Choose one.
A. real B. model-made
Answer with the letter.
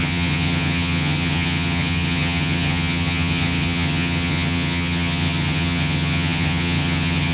B